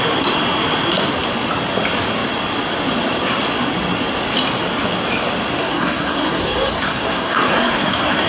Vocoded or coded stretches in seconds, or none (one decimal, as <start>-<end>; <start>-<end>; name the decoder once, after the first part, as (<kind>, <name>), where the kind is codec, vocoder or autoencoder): 5.6-8.3 (codec, SNAC)